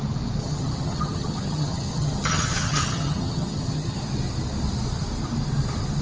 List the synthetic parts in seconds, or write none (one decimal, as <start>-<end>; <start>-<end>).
0.4-4.0